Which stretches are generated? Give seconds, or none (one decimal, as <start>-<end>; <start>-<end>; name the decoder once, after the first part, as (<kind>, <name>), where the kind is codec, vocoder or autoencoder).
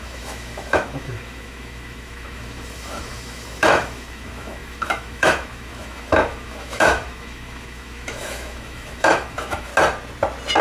0.0-9.7 (autoencoder, DAC-VAE)